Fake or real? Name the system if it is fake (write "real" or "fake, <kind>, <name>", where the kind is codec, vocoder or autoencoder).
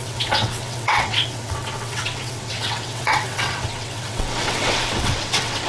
fake, vocoder, WaveNeXt